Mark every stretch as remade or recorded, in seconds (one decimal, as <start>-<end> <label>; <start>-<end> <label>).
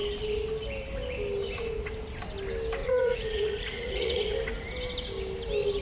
0.0-2.8 recorded; 2.8-4.3 remade; 4.3-5.8 recorded